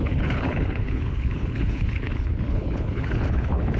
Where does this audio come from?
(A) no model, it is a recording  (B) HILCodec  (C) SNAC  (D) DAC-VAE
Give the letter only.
B